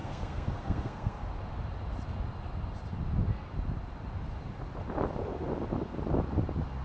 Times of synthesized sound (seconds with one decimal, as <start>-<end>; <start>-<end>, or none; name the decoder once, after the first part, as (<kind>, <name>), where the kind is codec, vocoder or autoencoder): 0.0-1.2 (codec, SNAC)